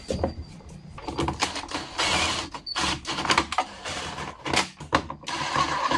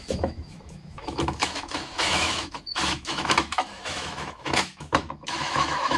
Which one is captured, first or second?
first